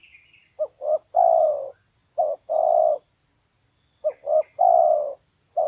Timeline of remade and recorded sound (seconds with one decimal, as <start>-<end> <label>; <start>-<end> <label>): 0.0-5.7 recorded